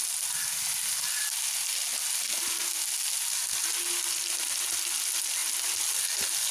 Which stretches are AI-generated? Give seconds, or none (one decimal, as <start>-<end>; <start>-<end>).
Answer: none